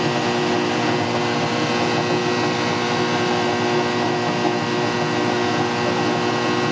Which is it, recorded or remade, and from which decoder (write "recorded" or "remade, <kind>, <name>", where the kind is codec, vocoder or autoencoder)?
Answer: recorded